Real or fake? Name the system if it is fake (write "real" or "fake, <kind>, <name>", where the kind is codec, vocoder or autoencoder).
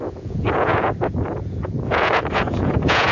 fake, vocoder, Vocos